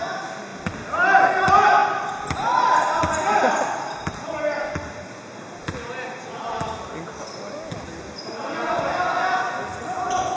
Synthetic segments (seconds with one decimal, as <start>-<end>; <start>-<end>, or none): none